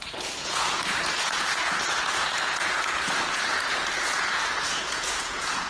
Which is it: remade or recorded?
remade